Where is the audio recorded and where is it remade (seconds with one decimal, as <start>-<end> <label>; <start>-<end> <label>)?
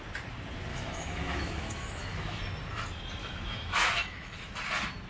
0.0-0.7 recorded; 0.7-2.4 remade; 2.4-3.2 recorded; 3.2-4.5 remade; 4.5-5.1 recorded